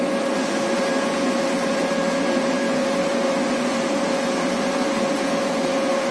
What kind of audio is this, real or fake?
fake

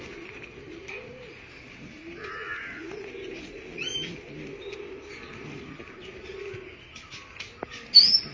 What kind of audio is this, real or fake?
real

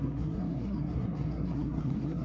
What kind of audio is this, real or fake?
fake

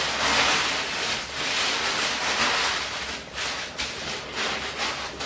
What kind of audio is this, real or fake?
real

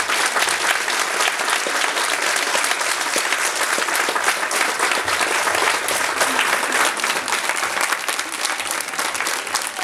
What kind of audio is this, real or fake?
real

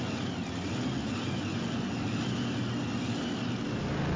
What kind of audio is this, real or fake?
real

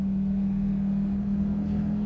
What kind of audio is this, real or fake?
fake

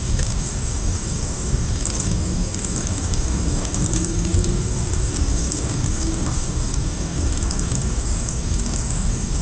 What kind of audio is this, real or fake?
fake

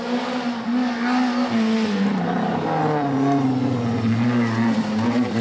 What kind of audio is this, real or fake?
real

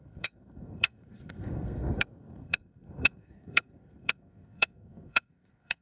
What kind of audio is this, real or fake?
fake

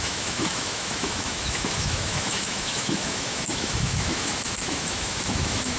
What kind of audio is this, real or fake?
fake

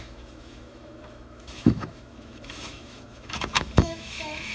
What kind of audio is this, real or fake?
fake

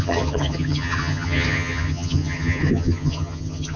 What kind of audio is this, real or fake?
fake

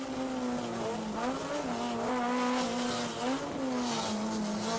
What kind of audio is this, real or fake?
real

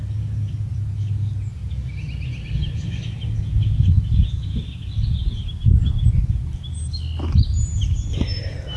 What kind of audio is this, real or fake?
real